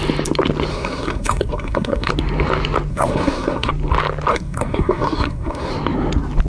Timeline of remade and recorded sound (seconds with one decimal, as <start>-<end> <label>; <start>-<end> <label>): 0.0-0.7 recorded; 0.7-2.1 remade; 2.1-2.9 recorded; 2.9-3.7 remade; 3.7-4.3 recorded; 4.3-5.7 remade; 5.7-6.5 recorded